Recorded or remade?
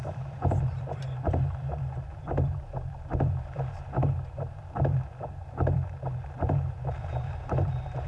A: remade